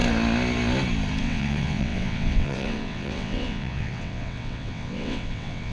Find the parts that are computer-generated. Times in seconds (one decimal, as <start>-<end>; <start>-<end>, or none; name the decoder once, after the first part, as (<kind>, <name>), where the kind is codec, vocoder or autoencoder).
1.2-5.7 (vocoder, WaveNeXt)